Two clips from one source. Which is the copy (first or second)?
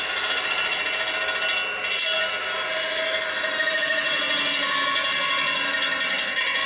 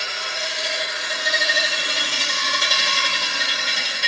second